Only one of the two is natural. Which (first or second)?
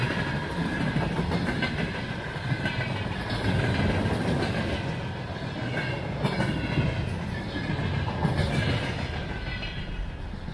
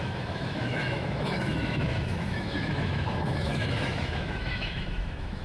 first